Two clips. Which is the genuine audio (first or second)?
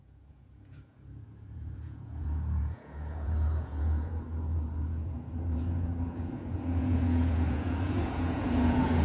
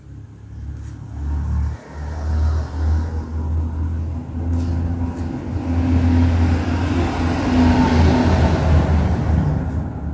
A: second